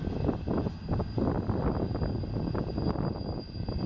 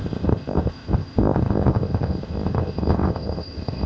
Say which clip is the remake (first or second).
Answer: second